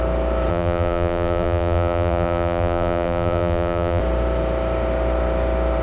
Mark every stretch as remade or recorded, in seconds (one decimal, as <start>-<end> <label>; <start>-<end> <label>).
0.0-0.5 recorded; 0.5-4.0 remade; 4.0-5.8 recorded